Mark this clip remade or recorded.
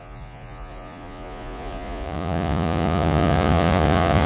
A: remade